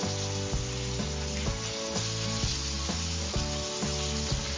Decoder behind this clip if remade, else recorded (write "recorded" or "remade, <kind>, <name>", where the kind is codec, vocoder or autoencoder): recorded